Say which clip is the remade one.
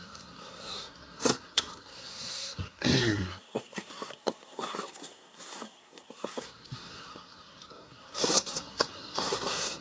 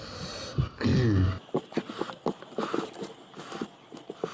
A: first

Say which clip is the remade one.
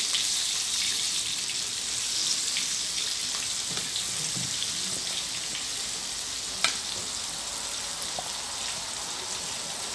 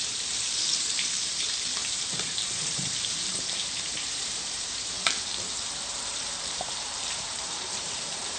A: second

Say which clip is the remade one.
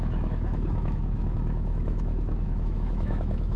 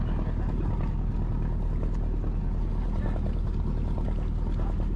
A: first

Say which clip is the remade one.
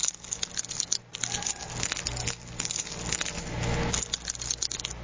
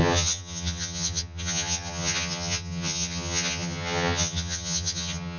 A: second